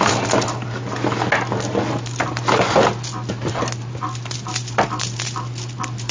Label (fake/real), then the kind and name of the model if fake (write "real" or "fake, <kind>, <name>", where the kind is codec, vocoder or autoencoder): real